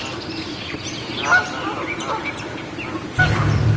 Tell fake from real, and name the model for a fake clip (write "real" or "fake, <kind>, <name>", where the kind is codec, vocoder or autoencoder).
fake, vocoder, BigVGAN v2